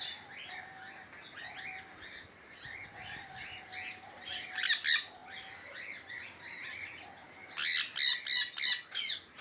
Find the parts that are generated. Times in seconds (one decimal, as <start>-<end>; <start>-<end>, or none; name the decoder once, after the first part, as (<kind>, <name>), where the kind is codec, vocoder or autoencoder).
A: none